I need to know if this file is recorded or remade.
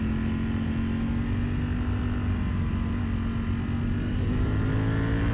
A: recorded